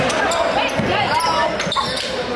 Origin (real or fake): real